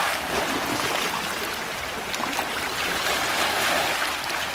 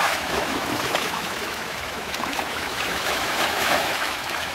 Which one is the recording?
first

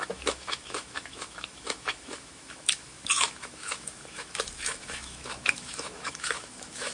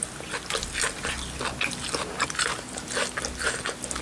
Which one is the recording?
second